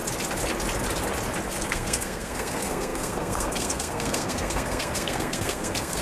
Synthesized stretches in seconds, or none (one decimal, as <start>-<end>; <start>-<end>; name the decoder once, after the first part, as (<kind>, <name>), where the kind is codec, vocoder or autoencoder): 1.5-6.0 (codec, SNAC)